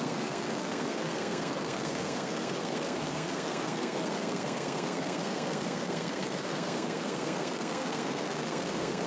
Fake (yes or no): yes